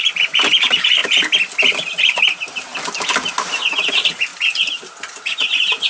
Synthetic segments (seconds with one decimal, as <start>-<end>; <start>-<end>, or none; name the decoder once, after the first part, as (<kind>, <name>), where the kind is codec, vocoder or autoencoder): 0.0-1.0 (vocoder, BigVGAN v2); 2.0-2.7; 3.9-4.3; 5.1-5.9